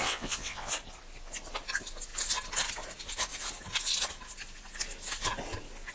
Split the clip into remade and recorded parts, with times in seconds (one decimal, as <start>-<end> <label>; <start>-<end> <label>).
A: 0.0-0.7 remade; 0.7-5.9 recorded